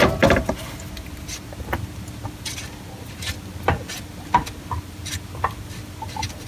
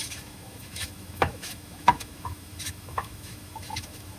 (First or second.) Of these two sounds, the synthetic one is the second